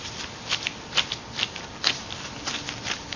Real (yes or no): yes